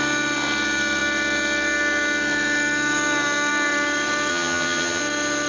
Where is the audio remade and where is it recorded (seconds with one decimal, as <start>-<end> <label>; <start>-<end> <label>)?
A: 0.0-4.3 recorded; 4.3-5.0 remade; 5.0-5.5 recorded